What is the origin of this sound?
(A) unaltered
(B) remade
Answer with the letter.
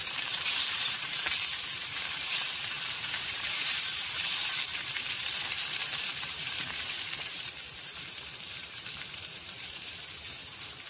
B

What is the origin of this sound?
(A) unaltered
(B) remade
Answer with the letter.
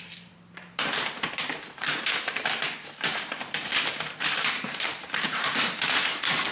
B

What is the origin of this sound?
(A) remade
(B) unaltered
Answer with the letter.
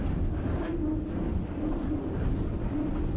A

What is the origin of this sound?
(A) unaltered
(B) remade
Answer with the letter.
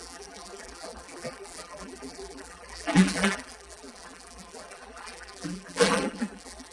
B